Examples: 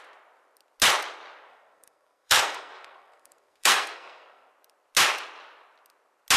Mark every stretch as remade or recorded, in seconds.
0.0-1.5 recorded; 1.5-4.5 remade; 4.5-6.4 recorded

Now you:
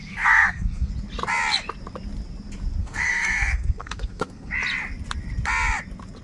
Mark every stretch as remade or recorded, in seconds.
0.0-0.9 remade; 0.9-2.8 recorded; 2.8-4.5 remade; 4.5-6.2 recorded

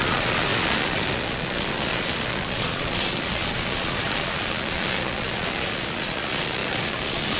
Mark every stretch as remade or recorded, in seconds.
0.0-7.4 remade

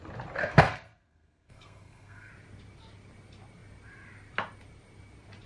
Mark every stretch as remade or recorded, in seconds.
0.0-0.4 recorded; 0.4-2.3 remade; 2.3-5.5 recorded

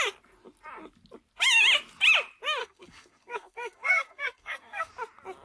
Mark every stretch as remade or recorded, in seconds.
0.0-2.6 recorded; 2.6-4.9 remade; 4.9-5.4 recorded

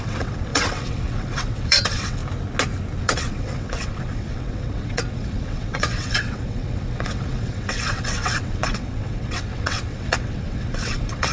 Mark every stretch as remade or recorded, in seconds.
0.0-2.2 remade; 2.2-3.0 recorded; 3.0-11.3 remade